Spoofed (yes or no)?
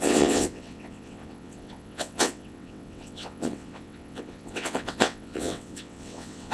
yes